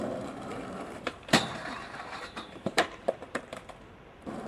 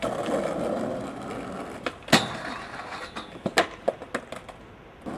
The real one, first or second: second